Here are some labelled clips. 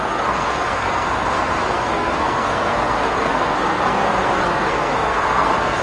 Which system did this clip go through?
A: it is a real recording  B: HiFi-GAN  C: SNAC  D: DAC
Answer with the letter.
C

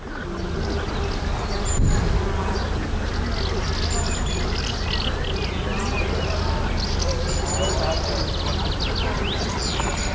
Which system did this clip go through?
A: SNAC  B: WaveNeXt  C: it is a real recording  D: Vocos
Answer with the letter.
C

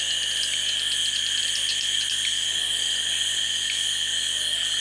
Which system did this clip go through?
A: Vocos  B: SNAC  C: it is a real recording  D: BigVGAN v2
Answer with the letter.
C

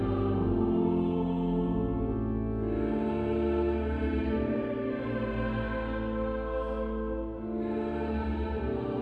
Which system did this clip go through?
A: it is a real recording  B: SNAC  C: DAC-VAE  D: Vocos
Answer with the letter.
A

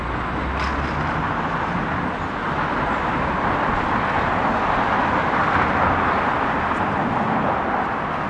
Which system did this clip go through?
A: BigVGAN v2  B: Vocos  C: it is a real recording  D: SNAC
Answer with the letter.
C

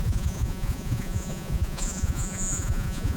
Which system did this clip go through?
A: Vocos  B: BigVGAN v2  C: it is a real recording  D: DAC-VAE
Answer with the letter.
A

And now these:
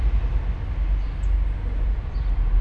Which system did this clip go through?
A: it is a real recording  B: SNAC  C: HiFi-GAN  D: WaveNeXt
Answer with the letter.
A